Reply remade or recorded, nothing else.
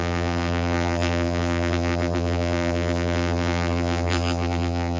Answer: remade